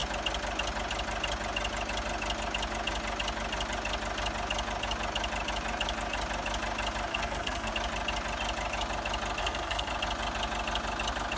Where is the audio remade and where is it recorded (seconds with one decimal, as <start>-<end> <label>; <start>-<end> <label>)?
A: 0.0-7.1 recorded; 7.1-7.7 remade; 7.7-9.4 recorded; 9.4-9.9 remade; 9.9-11.4 recorded